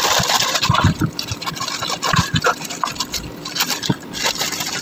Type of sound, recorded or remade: recorded